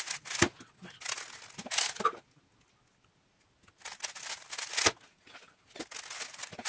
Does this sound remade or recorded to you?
recorded